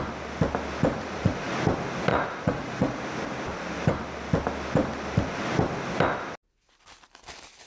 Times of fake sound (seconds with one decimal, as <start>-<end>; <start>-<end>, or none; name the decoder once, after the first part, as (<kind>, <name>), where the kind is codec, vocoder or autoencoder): 0.9-1.5 (vocoder, Vocos); 2.1-3.0